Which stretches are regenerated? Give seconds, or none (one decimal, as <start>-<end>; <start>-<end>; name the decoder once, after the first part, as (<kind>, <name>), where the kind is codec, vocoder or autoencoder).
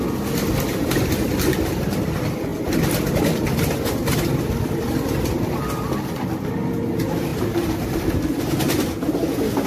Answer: 7.3-8.0 (vocoder, BigVGAN v2)